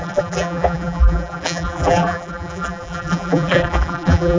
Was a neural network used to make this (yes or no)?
yes